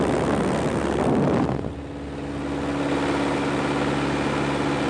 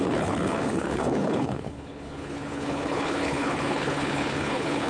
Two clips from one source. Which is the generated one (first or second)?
second